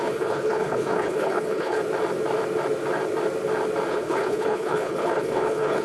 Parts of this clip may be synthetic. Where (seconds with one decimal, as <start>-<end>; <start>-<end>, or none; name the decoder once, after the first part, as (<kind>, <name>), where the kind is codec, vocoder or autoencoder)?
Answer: 0.0-1.8 (codec, HILCodec); 3.9-5.8